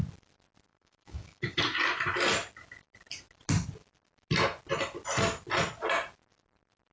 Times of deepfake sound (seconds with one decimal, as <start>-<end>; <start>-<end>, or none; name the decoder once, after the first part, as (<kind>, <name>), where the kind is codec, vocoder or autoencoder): 0.7-1.6 (autoencoder, DAC-VAE)